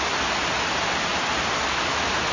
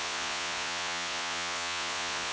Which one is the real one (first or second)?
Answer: first